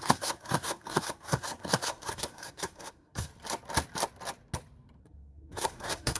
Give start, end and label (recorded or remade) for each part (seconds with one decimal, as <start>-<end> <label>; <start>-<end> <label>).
0.0-3.3 remade; 3.3-5.0 recorded; 5.0-6.2 remade